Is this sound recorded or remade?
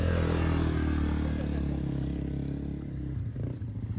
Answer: recorded